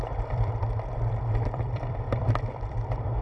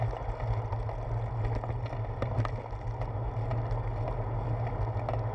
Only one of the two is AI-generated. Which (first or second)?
first